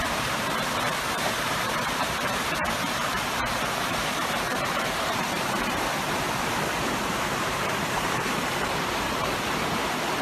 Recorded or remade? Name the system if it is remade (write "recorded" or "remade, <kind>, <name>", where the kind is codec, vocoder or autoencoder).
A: remade, vocoder, BigVGAN v2